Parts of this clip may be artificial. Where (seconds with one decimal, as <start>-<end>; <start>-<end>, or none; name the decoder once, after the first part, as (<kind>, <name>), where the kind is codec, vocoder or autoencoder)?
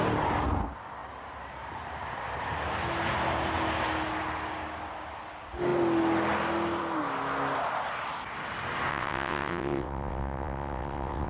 8.9-11.3 (vocoder, WaveNeXt)